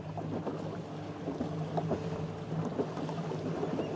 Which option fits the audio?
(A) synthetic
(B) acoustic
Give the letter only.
B